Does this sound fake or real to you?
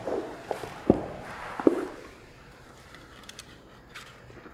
fake